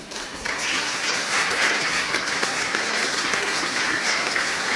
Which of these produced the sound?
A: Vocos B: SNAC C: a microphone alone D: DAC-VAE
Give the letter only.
B